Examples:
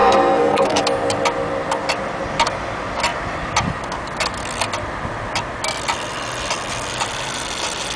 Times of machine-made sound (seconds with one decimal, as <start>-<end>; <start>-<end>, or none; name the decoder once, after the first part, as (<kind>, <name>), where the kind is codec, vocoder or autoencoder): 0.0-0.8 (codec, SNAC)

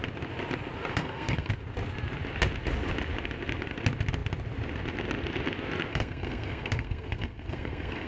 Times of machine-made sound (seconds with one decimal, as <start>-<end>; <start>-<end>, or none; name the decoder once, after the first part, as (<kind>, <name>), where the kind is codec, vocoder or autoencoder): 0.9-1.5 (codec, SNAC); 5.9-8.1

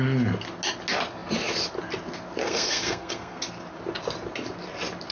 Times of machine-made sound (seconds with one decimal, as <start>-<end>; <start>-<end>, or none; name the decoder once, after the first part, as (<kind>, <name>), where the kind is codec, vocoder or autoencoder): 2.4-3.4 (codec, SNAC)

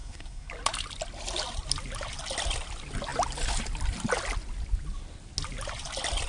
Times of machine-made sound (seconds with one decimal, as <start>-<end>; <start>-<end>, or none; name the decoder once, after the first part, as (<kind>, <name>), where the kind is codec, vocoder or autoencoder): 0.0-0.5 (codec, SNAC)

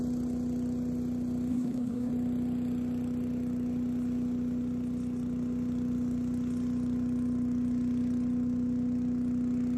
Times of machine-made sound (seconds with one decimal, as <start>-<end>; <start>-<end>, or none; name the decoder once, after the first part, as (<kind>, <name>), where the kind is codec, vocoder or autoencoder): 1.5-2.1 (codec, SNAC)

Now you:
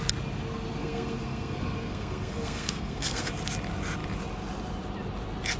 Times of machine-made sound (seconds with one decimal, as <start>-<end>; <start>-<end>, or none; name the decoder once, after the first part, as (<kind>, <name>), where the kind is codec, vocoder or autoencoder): 0.8-3.3 (codec, SNAC)